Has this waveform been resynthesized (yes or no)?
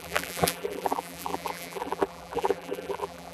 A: yes